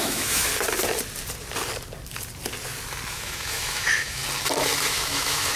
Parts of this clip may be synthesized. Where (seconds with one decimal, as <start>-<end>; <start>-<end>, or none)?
0.0-0.5; 3.1-4.2; 4.8-5.6